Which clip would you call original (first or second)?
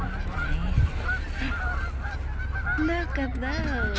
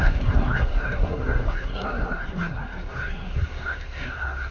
first